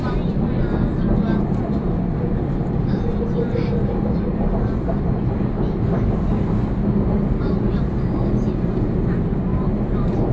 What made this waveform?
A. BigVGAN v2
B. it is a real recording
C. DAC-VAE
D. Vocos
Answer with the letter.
B